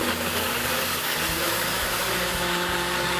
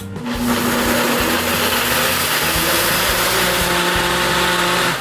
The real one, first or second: second